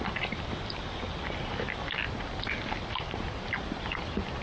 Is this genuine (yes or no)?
yes